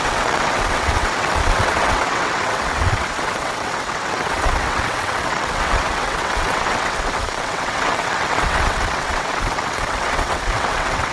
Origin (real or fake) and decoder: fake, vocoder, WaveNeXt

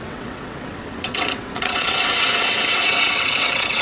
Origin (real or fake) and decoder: fake, vocoder, WaveNeXt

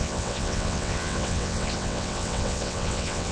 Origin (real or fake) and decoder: fake, vocoder, WaveNeXt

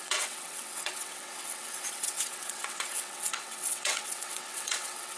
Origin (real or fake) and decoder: fake, vocoder, WaveNeXt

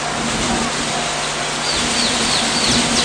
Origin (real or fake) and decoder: real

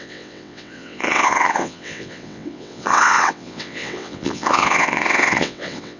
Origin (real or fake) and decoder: fake, vocoder, WaveNeXt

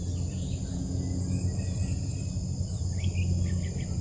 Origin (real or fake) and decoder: real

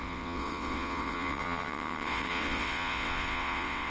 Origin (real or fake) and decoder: fake, vocoder, WaveNeXt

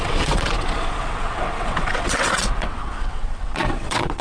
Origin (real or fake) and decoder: fake, vocoder, WaveNeXt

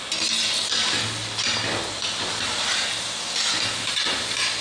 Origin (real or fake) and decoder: real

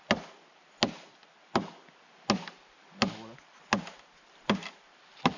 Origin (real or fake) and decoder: real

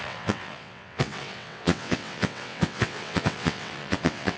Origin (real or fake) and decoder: fake, vocoder, WaveNeXt